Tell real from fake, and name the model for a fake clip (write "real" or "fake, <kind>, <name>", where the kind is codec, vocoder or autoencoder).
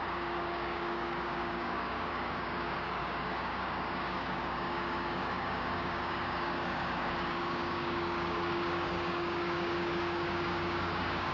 fake, codec, DAC